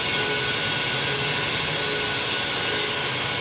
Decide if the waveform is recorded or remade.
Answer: recorded